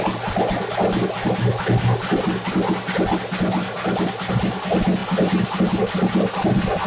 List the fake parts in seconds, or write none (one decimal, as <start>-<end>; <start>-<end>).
none